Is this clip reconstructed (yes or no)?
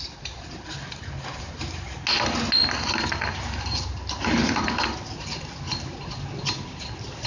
no